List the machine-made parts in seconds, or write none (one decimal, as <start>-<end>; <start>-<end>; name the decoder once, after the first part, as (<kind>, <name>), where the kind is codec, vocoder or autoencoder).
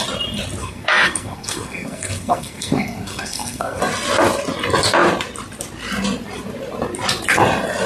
0.6-3.8 (codec, SNAC)